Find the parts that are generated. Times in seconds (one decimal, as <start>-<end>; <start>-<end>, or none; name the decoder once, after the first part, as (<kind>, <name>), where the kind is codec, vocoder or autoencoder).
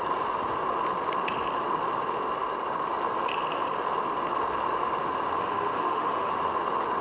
5.4-6.3 (autoencoder, DAC-VAE)